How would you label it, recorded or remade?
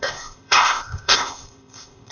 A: remade